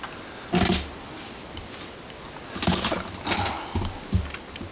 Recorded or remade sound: recorded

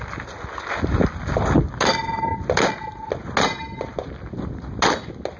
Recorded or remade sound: recorded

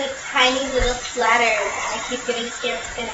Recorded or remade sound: remade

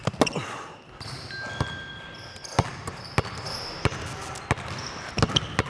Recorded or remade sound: recorded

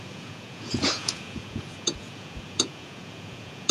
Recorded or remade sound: remade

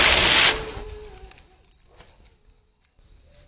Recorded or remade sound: recorded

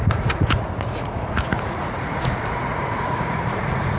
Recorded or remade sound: remade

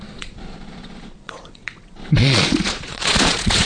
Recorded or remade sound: remade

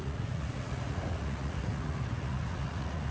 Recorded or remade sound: remade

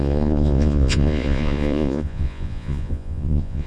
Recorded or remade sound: remade